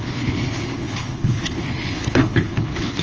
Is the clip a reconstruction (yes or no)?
yes